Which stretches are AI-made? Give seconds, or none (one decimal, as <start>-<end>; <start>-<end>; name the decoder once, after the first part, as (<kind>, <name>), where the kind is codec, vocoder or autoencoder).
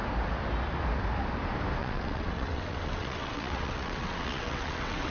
1.8-5.1 (vocoder, WaveNeXt)